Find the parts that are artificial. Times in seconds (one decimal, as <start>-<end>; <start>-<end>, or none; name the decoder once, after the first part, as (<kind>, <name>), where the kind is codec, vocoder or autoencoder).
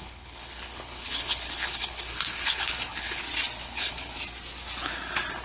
0.0-3.2 (codec, HILCodec); 3.6-4.1